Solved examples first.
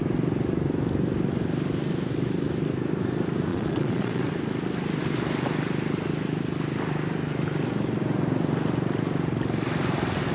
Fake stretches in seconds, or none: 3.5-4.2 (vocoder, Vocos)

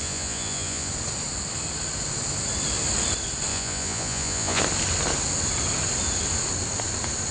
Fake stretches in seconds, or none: 0.0-0.9 (vocoder, Vocos); 3.5-4.6

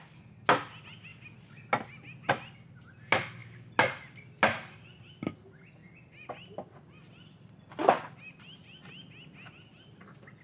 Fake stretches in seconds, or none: none

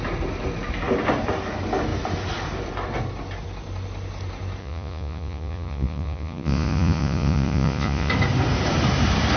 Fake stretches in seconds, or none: 4.6-8.1 (vocoder, Vocos)

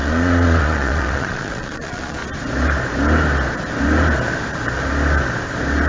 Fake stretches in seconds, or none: 0.0-2.2 (vocoder, Vocos)

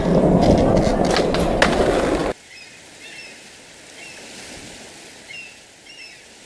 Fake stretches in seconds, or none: none

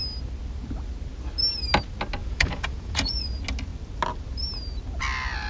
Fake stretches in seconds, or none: 2.2-3.3 (vocoder, Vocos)

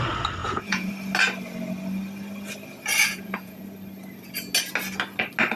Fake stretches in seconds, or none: 0.4-0.9 (vocoder, Vocos); 3.0-3.6